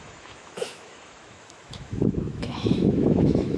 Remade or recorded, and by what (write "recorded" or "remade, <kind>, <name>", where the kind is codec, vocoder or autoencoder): remade, autoencoder, DAC-VAE